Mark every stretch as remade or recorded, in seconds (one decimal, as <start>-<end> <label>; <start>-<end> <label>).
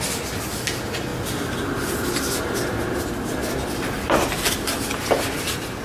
0.0-5.8 recorded